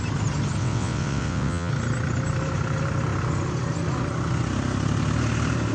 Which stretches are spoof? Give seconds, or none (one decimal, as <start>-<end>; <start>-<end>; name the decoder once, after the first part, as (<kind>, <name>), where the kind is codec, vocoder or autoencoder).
0.6-1.7 (vocoder, WaveNeXt)